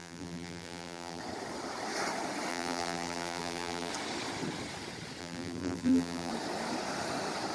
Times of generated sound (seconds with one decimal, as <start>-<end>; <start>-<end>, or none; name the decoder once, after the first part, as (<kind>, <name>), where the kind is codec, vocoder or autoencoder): 0.0-1.2 (vocoder, BigVGAN v2); 2.5-3.9; 5.2-6.3

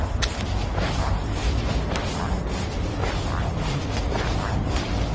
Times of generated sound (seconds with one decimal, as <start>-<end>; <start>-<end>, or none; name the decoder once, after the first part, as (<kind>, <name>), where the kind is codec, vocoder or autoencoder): none

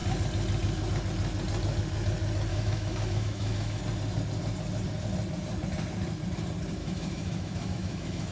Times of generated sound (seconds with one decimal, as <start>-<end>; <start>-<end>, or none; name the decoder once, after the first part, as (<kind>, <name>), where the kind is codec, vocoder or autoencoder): 2.5-3.8 (autoencoder, DAC-VAE); 6.8-8.3

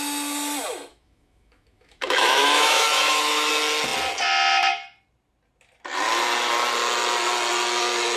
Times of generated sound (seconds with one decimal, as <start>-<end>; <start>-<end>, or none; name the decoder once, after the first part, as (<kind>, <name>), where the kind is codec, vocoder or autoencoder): 0.9-3.5 (autoencoder, DAC-VAE)

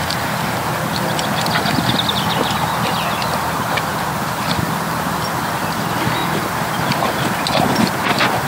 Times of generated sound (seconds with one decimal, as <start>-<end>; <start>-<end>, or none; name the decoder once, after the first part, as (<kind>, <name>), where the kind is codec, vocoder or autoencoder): 6.2-7.9 (vocoder, BigVGAN v2)